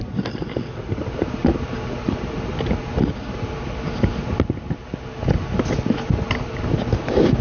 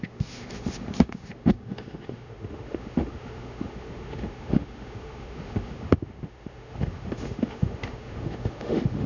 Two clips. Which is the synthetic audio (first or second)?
second